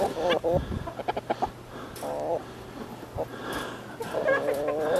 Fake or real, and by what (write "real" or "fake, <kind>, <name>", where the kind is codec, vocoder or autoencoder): real